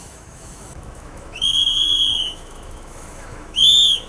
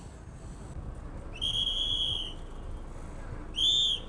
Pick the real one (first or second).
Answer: second